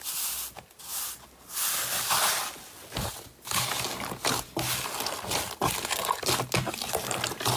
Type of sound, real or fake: real